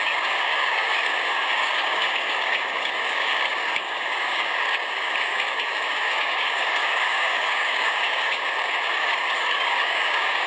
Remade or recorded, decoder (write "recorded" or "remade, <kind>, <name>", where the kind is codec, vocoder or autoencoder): remade, codec, DAC